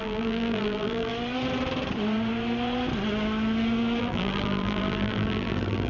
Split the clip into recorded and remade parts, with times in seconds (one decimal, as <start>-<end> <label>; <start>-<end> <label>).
0.0-1.1 remade; 1.1-4.0 recorded; 4.0-5.9 remade